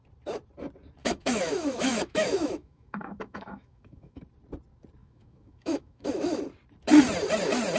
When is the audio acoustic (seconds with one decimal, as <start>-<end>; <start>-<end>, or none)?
0.0-1.0; 4.2-5.0; 6.4-7.8